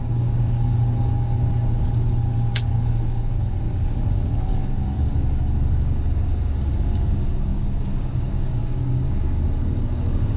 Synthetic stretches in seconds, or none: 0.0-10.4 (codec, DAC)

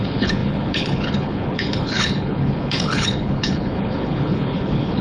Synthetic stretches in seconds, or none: 0.0-5.0 (codec, HILCodec)